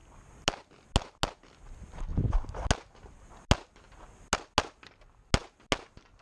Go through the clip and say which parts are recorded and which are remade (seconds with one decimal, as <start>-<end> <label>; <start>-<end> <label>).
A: 0.0-2.1 recorded; 2.1-2.7 remade; 2.7-6.2 recorded